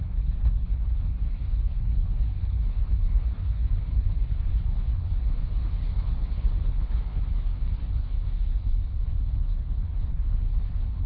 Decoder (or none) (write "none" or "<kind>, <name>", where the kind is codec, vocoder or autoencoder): codec, HILCodec